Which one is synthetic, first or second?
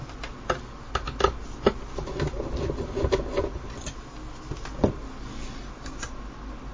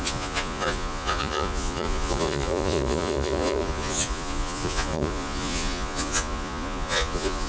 second